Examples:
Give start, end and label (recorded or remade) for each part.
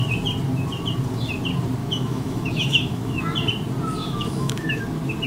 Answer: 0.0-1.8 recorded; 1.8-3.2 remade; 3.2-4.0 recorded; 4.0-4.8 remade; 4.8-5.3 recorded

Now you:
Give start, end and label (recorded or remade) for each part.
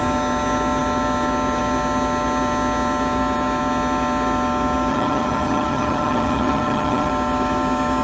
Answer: 0.0-4.9 recorded; 4.9-7.1 remade; 7.1-8.0 recorded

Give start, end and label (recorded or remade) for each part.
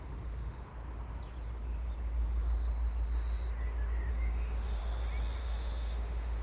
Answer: 0.0-0.7 remade; 0.7-4.1 recorded; 4.1-4.8 remade; 4.8-5.4 recorded; 5.4-6.4 remade